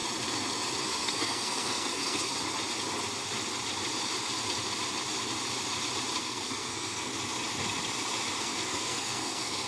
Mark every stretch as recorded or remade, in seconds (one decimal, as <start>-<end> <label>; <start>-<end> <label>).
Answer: 0.0-0.8 recorded; 0.8-2.3 remade; 2.3-6.2 recorded; 6.2-7.1 remade; 7.1-8.4 recorded; 8.4-9.7 remade